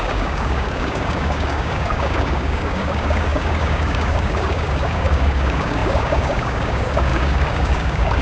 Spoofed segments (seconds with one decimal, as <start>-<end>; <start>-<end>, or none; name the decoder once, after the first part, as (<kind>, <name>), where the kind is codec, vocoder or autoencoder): 0.0-8.2 (codec, DAC)